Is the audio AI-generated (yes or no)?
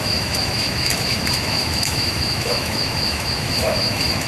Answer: yes